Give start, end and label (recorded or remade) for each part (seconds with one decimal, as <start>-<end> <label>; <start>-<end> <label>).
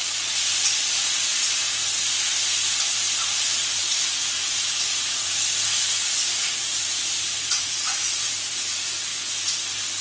0.0-2.4 remade; 2.4-3.2 recorded; 3.2-9.1 remade; 9.1-10.0 recorded